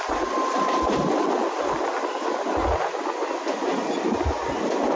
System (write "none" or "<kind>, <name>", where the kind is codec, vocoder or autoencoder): none